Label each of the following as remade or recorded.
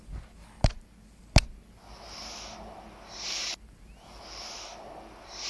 recorded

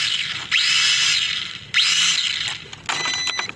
recorded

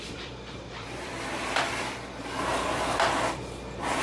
remade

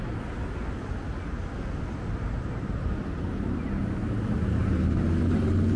recorded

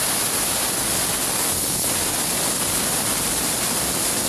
recorded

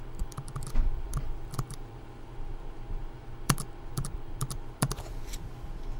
remade